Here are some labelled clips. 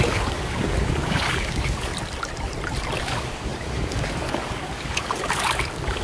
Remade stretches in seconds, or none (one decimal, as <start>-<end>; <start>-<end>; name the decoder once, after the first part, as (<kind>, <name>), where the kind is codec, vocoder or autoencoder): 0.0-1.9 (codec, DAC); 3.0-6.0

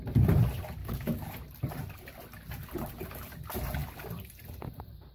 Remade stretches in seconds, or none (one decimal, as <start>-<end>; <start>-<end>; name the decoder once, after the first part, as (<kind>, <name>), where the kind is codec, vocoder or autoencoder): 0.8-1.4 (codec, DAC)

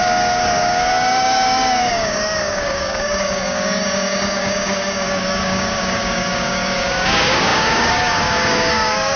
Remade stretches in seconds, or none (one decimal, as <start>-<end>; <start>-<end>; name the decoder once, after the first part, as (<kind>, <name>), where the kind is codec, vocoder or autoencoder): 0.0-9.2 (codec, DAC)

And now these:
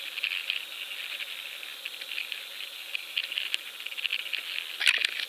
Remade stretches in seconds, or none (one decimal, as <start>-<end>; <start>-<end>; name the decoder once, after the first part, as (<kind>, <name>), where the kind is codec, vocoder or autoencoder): none

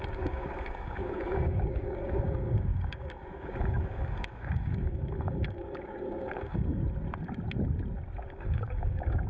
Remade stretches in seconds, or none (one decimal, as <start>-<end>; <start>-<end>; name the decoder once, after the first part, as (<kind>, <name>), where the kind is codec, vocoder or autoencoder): 0.0-6.8 (codec, DAC); 8.2-9.3

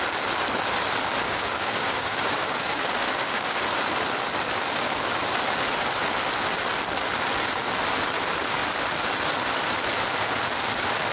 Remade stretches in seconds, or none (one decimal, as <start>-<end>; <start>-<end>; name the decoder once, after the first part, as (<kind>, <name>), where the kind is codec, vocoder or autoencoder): 1.2-3.6 (codec, DAC)